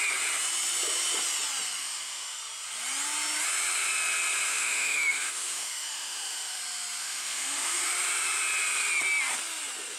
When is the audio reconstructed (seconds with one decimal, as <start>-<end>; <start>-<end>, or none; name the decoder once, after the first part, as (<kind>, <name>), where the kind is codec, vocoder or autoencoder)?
1.8-2.4 (autoencoder, DAC-VAE); 4.5-6.6; 7.0-7.9